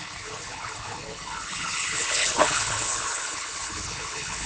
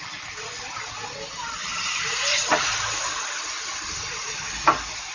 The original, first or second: second